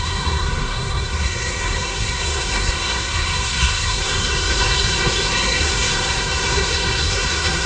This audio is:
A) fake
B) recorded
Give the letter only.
A